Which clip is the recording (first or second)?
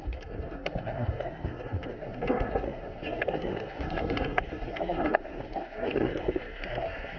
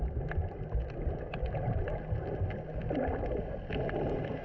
second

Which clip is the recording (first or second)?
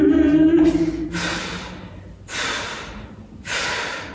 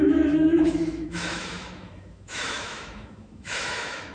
first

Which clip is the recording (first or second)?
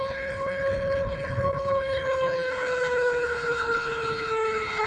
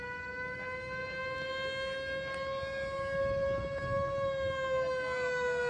second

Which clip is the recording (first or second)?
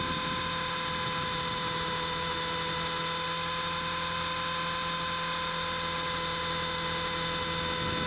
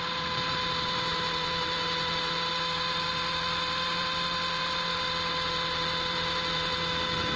first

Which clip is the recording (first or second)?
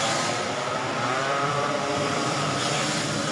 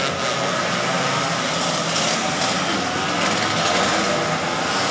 second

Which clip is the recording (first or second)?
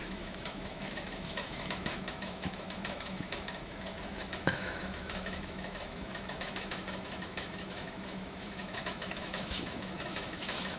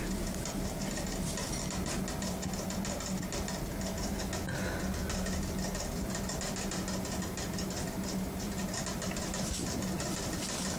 second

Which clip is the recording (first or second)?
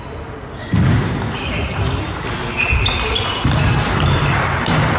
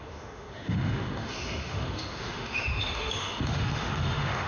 first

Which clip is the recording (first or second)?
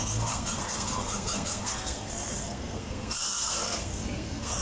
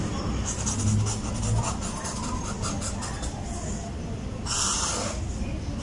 second